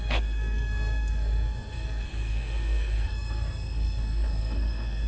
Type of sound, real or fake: fake